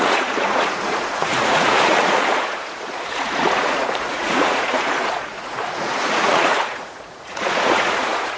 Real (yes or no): no